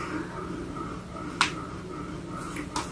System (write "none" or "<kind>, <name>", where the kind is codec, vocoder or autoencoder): none